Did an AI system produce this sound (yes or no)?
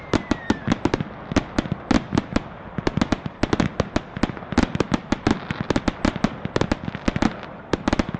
no